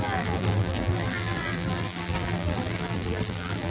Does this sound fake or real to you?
fake